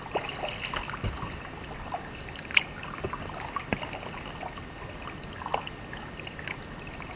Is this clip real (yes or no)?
yes